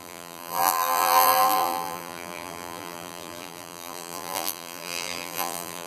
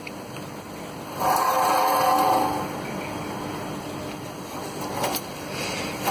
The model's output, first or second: first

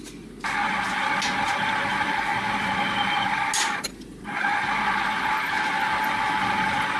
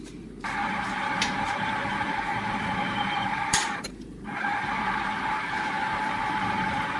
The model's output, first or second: second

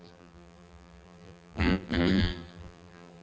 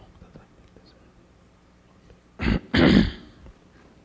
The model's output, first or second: first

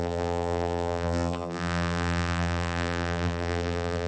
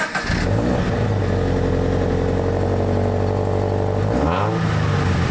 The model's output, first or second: first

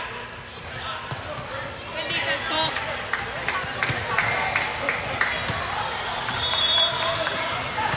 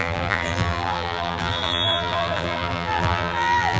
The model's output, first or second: second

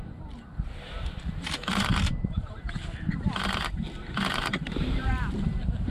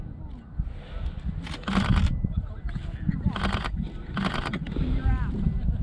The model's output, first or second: first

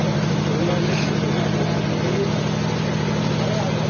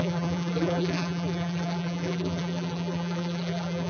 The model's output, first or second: second